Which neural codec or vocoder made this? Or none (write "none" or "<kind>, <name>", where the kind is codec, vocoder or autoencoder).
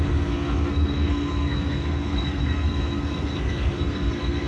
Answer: codec, SNAC